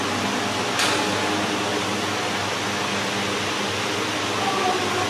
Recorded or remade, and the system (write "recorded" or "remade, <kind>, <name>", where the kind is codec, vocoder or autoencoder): recorded